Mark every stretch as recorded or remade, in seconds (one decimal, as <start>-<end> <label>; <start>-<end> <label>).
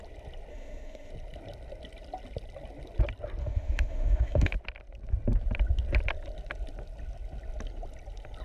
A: 0.0-0.5 recorded; 0.5-1.1 remade; 1.1-3.4 recorded; 3.4-4.5 remade; 4.5-8.4 recorded